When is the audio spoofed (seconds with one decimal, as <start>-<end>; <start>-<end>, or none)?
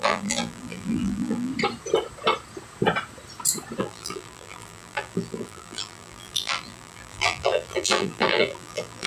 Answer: 0.0-1.5; 3.8-9.1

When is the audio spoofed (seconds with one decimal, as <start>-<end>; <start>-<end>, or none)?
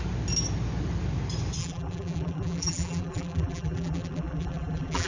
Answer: 1.6-5.1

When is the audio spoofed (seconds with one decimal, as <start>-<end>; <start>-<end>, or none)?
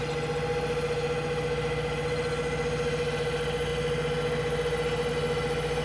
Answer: none